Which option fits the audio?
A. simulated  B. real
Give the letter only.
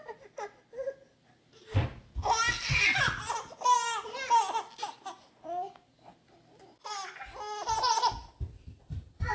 B